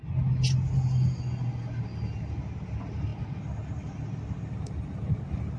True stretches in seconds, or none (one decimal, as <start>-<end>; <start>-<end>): 0.0-5.6